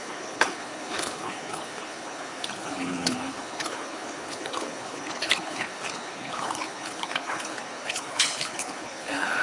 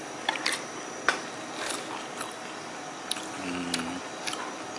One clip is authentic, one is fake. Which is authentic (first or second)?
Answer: second